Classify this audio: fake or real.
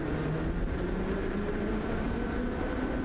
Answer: real